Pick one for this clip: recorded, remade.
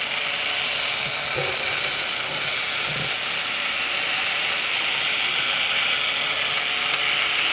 recorded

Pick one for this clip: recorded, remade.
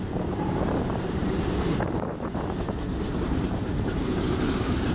remade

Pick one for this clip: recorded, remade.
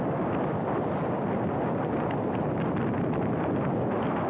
recorded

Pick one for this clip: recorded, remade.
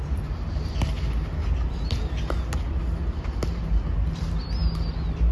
recorded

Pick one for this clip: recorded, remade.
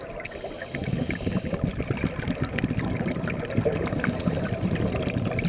recorded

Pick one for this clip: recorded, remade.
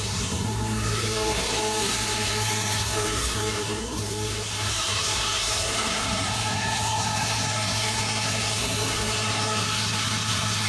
remade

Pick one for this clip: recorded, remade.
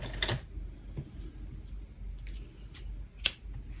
recorded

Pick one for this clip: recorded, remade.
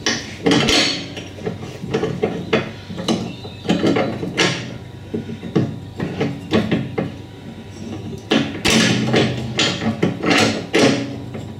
recorded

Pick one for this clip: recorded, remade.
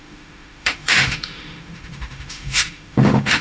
remade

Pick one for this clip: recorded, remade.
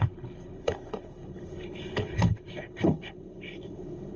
remade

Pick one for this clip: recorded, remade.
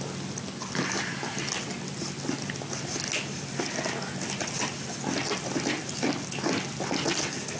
recorded